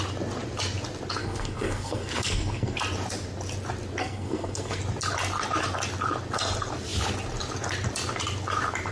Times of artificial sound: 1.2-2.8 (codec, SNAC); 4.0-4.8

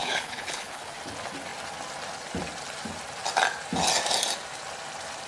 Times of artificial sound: 0.0-0.9 (codec, HILCodec)

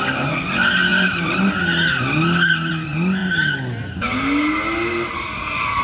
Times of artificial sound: none

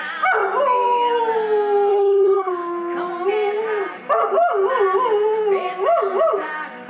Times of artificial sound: 1.9-2.5 (codec, SNAC)

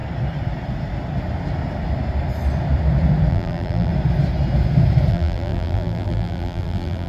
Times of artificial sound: 3.3-3.9 (vocoder, BigVGAN v2); 5.1-7.1

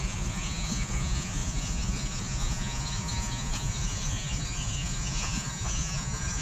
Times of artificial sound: 0.0-6.4 (vocoder, Vocos)